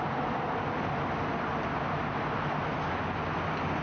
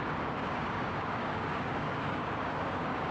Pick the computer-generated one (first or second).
second